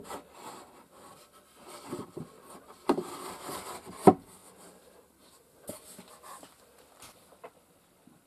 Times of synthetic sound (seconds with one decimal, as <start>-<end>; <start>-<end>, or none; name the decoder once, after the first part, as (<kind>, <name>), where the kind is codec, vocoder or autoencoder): none